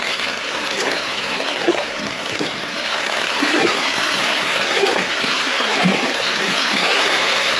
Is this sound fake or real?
fake